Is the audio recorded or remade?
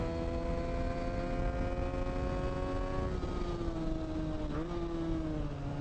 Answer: recorded